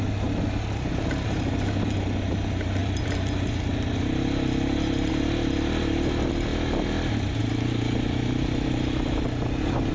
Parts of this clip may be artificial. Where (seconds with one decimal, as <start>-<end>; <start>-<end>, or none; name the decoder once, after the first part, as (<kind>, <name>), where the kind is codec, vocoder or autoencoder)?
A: none